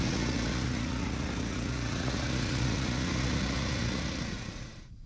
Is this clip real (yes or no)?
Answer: no